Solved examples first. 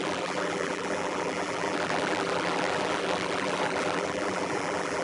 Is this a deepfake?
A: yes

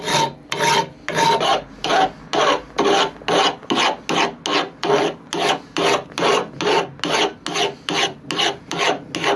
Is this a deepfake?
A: no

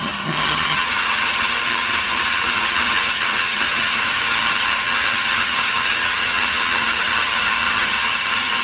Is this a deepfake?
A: yes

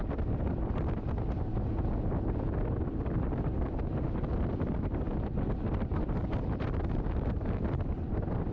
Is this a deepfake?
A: yes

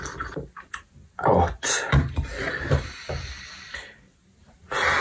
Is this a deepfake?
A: no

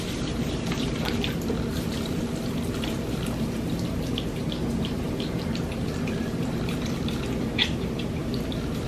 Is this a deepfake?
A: yes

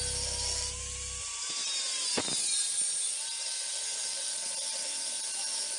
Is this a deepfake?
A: no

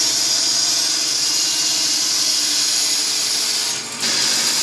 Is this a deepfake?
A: no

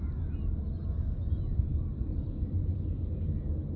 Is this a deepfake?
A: no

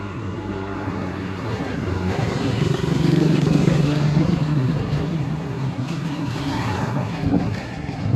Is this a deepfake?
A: yes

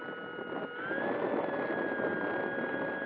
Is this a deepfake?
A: no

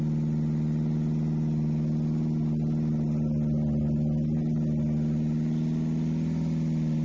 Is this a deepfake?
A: no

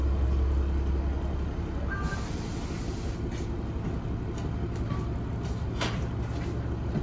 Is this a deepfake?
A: no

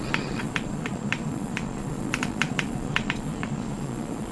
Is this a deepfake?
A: yes